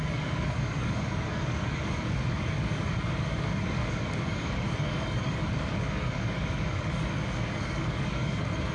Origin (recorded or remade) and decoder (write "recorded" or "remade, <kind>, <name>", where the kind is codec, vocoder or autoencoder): remade, codec, DAC